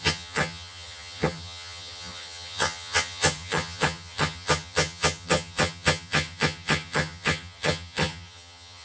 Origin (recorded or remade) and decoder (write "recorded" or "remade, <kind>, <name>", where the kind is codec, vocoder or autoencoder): remade, vocoder, HiFi-GAN